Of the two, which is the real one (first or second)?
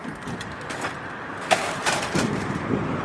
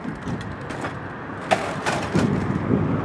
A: second